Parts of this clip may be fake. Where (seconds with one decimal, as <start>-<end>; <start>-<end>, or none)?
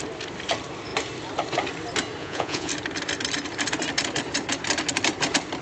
2.2-2.7